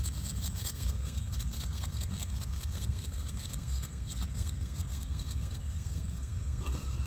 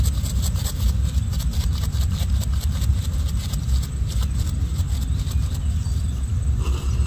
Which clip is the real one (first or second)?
second